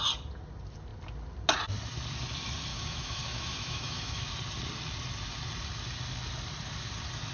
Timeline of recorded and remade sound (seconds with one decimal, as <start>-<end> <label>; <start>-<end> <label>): 0.0-2.7 recorded; 2.7-4.3 remade; 4.3-7.3 recorded